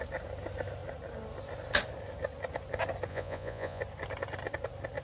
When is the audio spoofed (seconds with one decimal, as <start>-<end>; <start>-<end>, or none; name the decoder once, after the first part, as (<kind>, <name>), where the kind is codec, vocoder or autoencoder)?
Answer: 3.1-3.8 (vocoder, Vocos)